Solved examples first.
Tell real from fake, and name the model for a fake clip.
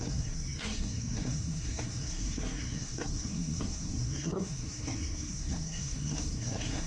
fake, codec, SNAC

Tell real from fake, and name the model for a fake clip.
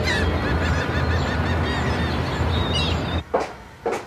real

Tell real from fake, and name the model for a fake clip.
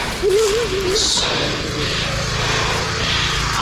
real